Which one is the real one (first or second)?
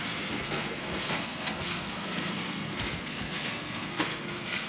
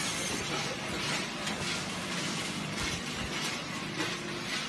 second